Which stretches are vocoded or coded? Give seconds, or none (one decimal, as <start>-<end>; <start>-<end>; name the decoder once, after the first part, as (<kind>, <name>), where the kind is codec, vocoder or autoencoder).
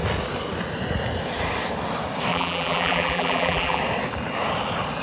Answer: 2.3-3.8 (vocoder, BigVGAN v2)